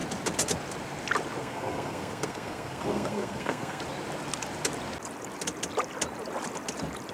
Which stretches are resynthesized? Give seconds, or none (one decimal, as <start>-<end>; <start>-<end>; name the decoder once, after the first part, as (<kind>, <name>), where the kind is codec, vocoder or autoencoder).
1.4-3.8 (codec, SNAC)